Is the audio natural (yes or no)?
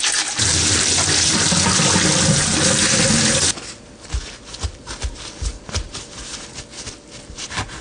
yes